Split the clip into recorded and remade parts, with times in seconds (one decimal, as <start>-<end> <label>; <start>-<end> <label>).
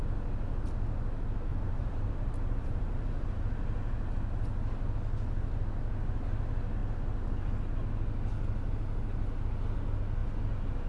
0.0-1.5 recorded; 1.5-3.4 remade; 3.4-10.9 recorded